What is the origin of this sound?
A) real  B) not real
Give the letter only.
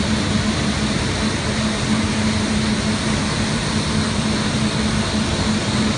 A